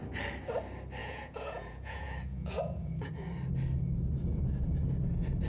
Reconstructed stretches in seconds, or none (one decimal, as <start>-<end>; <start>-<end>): 1.0-3.1; 4.3-4.8